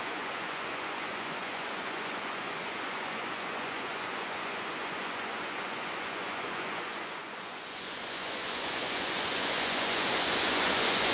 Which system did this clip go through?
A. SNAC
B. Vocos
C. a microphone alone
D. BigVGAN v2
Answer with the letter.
B